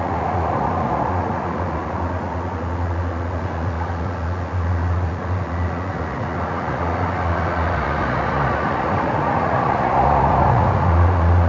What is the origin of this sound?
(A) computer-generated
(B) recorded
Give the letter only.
A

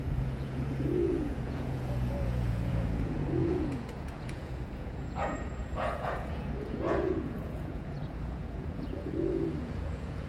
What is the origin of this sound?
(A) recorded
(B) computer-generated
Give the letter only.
B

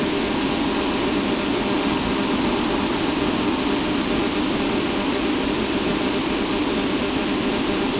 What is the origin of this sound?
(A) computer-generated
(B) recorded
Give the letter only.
B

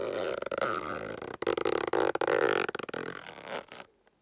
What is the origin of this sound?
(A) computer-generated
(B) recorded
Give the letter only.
B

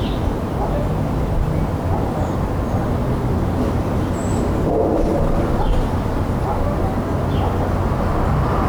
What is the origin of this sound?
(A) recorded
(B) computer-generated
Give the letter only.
A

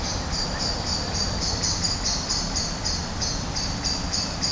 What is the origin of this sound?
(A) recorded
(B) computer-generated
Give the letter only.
A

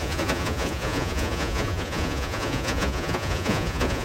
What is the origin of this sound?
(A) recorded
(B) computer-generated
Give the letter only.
B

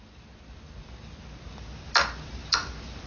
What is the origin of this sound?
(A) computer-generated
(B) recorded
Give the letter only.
B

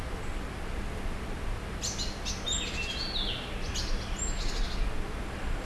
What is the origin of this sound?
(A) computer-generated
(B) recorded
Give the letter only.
B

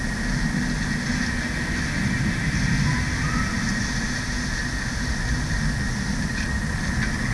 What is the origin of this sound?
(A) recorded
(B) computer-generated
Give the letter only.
A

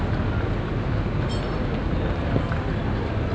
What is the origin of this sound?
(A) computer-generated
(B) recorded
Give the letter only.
B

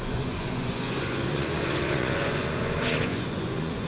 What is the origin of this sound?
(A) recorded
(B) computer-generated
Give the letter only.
B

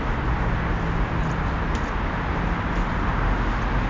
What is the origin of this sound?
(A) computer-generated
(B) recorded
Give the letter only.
B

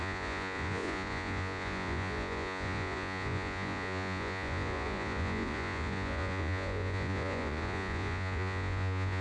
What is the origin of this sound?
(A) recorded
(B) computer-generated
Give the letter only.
B